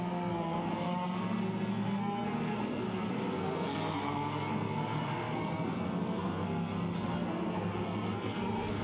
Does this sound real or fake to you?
fake